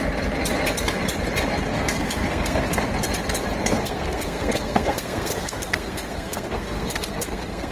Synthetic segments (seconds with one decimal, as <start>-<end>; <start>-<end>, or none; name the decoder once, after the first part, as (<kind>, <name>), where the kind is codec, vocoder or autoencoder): 1.7-2.8 (codec, SNAC); 3.6-7.7